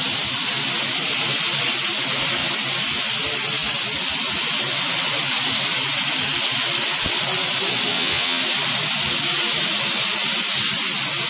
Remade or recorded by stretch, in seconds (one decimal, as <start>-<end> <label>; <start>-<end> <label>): 0.0-7.9 recorded; 7.9-8.4 remade; 8.4-11.3 recorded